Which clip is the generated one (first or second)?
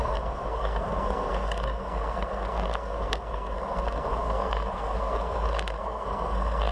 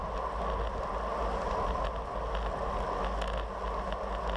first